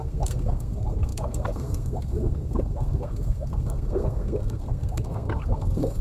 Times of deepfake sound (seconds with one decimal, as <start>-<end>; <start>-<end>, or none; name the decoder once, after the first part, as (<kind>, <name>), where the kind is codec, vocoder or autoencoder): 0.0-6.0 (codec, SNAC)